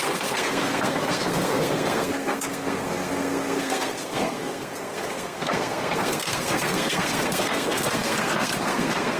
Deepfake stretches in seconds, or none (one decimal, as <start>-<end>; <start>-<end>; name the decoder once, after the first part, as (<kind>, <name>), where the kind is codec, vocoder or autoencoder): 0.0-9.2 (codec, SNAC)